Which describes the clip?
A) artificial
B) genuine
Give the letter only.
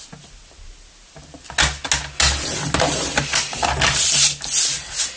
B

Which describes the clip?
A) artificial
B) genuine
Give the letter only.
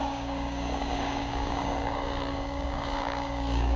A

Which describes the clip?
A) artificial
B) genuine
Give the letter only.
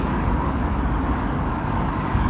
A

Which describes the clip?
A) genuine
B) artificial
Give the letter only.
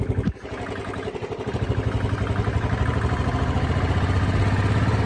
A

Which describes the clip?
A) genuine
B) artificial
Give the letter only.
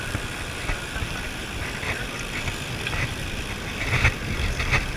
A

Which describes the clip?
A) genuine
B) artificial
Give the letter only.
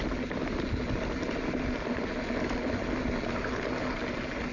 A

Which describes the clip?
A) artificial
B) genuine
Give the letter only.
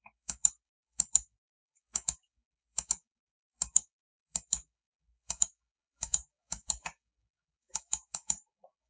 A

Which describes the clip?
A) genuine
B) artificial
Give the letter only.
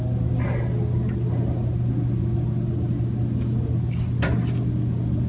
A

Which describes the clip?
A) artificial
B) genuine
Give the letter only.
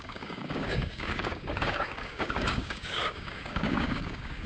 A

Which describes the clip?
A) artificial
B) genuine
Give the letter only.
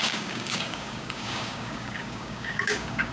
A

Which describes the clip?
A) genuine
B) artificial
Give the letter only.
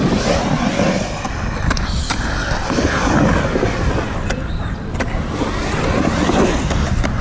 A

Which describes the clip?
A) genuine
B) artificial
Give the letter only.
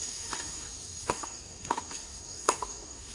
B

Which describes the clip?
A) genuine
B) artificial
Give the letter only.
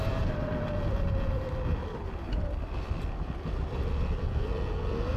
A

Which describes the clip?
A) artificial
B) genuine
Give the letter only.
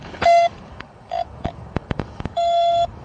A